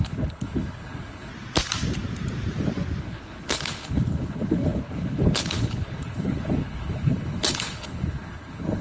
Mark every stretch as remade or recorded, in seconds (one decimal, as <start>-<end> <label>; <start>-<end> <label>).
0.0-1.3 remade; 1.3-3.0 recorded; 3.0-8.8 remade